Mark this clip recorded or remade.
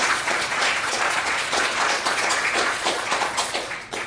remade